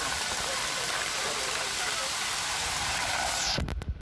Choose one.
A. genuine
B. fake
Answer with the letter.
B